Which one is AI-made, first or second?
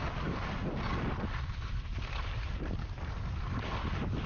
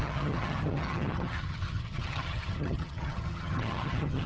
second